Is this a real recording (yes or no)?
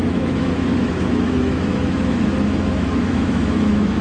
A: no